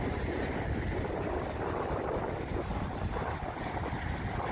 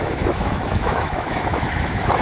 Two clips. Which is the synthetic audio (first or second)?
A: second